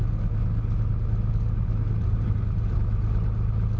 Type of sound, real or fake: real